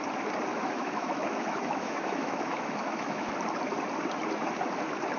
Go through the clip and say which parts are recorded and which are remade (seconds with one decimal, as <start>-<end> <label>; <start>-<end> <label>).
0.0-0.5 recorded; 0.5-3.3 remade; 3.3-5.2 recorded